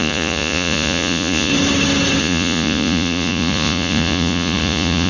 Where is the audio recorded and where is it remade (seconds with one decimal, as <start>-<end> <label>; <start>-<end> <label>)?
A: 0.0-1.5 remade; 1.5-2.2 recorded; 2.2-5.1 remade